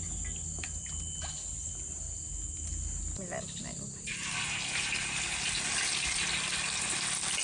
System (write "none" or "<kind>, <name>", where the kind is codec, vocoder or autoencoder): none